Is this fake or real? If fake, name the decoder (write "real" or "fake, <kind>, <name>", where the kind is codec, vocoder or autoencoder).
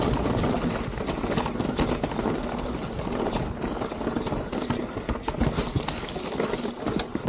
real